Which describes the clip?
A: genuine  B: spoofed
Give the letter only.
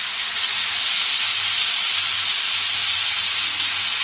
A